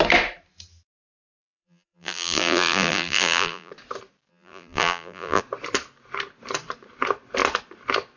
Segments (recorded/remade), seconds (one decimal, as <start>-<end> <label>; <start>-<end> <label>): 0.0-1.4 recorded; 1.4-3.7 remade; 3.7-4.3 recorded; 4.3-5.4 remade; 5.4-8.2 recorded